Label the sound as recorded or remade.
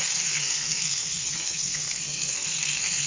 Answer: remade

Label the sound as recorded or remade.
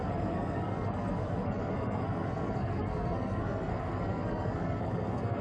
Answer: remade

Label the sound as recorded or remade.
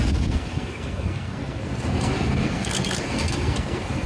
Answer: remade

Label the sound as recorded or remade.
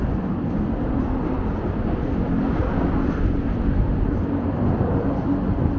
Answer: remade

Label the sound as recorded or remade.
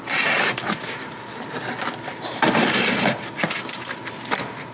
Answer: recorded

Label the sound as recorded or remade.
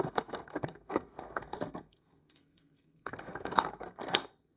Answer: remade